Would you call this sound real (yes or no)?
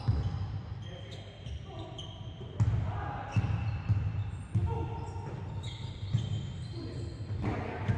yes